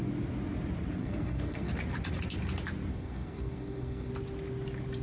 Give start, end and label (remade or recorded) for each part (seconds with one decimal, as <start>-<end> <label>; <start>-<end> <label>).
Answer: 0.0-1.0 recorded; 1.0-1.7 remade; 1.7-2.9 recorded; 2.9-4.1 remade; 4.1-5.0 recorded